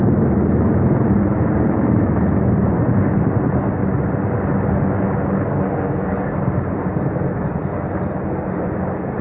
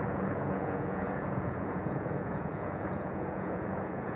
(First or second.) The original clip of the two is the first